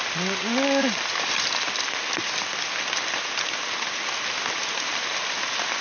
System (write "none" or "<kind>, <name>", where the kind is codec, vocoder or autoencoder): none